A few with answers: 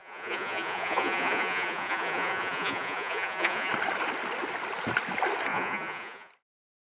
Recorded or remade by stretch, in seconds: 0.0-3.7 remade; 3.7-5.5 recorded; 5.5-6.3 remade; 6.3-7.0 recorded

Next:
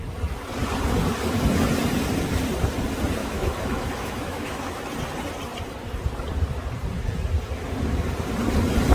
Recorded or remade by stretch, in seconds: 0.0-3.2 recorded; 3.2-4.8 remade; 4.8-8.9 recorded

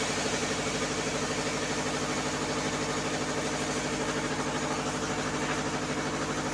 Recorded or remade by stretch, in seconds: 0.0-6.5 recorded

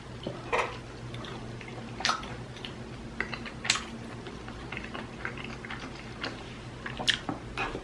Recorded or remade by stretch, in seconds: 0.0-7.8 recorded